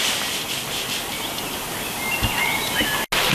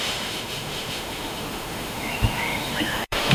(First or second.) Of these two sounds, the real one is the first